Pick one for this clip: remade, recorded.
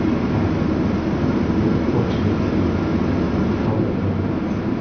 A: recorded